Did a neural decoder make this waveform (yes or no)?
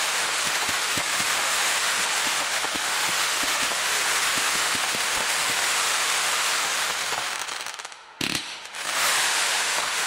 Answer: yes